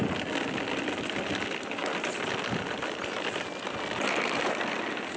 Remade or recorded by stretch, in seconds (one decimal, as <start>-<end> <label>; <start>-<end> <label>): 0.0-5.2 recorded